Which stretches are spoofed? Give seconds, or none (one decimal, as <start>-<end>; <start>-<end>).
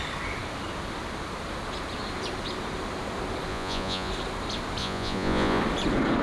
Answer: 3.5-4.1; 4.8-5.6